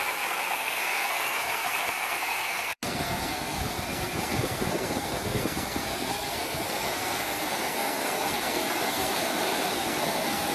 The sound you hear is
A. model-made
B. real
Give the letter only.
A